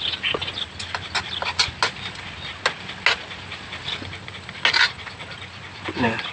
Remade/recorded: recorded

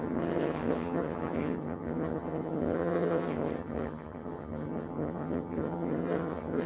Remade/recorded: remade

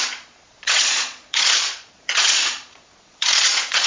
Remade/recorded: remade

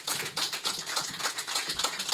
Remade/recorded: remade